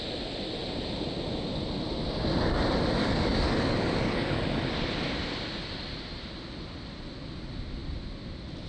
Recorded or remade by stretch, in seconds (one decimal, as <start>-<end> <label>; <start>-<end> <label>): 0.0-3.0 recorded; 3.0-4.7 remade; 4.7-8.7 recorded